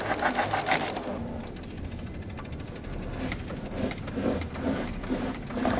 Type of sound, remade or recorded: recorded